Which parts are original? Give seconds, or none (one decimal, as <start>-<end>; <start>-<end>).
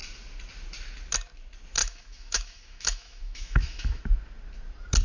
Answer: 0.0-1.8; 4.0-5.0